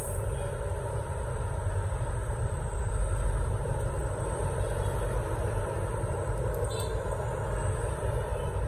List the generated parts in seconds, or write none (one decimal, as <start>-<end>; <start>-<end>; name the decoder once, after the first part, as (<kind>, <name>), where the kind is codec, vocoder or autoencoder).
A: 2.2-6.9 (vocoder, BigVGAN v2)